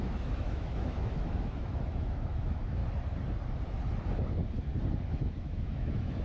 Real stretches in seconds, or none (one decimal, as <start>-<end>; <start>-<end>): 2.8-5.1